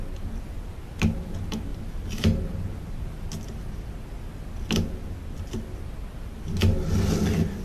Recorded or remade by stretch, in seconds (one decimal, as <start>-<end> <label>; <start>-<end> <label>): 0.0-1.7 recorded; 1.7-4.4 remade; 4.4-7.6 recorded